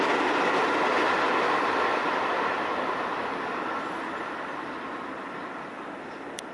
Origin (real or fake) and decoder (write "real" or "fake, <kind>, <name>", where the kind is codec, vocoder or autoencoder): fake, vocoder, BigVGAN v2